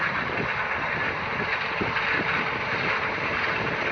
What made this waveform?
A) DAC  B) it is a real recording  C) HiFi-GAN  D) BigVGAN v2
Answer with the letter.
B